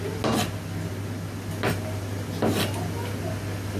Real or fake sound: real